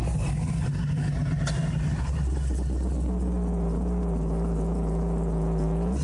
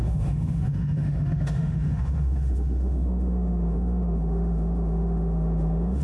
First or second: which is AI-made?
second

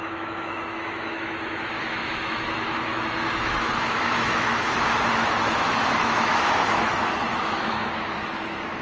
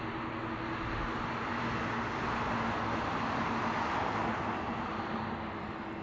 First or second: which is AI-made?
first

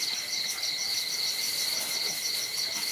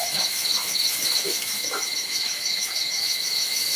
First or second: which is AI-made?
second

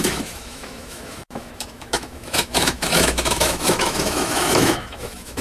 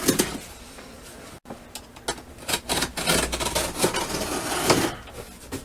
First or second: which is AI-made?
first